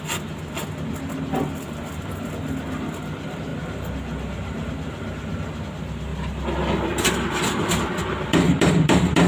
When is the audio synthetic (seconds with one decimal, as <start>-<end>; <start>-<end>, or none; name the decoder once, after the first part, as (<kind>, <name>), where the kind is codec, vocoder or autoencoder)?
6.1-9.3 (vocoder, BigVGAN v2)